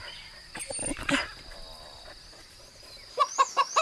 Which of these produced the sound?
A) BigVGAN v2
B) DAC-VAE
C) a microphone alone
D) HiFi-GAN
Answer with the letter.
C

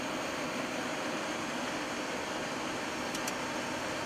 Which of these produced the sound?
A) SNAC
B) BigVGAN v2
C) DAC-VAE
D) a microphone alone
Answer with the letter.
D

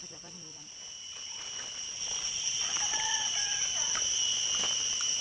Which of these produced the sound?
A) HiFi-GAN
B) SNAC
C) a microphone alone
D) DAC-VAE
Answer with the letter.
C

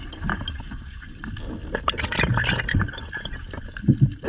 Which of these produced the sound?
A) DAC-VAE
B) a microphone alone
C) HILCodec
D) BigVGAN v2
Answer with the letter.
B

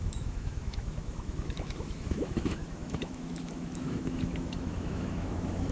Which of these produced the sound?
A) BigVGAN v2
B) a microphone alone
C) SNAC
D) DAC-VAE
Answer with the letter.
D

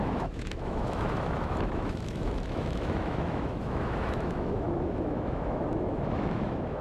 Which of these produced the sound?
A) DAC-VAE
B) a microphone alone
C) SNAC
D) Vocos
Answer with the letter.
A